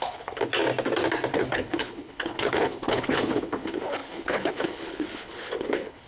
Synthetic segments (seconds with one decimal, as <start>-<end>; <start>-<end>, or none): 0.0-0.5; 1.3-6.1